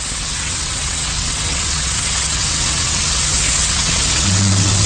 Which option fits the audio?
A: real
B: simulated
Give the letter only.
B